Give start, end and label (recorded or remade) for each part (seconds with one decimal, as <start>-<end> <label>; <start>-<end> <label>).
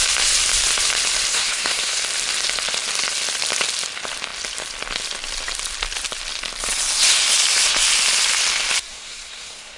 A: 0.0-1.3 recorded; 1.3-2.0 remade; 2.0-8.9 recorded; 8.9-9.8 remade